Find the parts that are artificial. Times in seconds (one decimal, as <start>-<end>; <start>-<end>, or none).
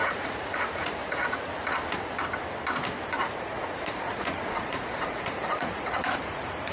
0.0-1.5; 3.2-6.7